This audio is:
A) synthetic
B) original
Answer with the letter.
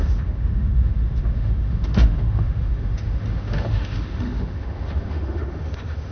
A